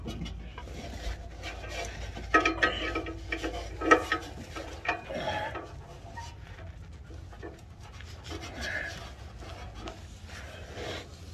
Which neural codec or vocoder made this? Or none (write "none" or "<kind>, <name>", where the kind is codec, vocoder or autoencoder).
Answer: none